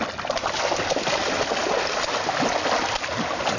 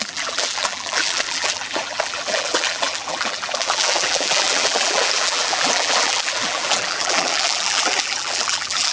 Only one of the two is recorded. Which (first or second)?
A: first